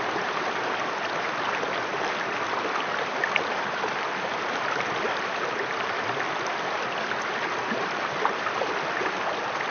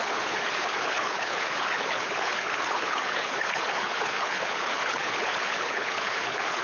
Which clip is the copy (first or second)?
second